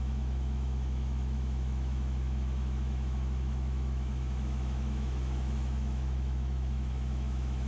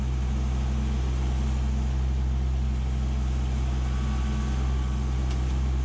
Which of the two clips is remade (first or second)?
first